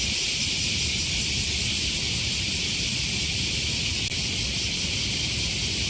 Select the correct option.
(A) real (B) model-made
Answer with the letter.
A